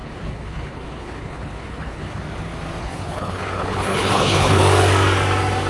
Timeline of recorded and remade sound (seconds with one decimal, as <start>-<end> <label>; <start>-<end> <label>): 0.0-2.2 remade; 2.2-2.8 recorded; 2.8-4.6 remade; 4.6-5.7 recorded